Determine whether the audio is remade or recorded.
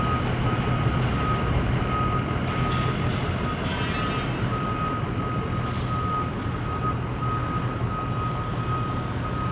recorded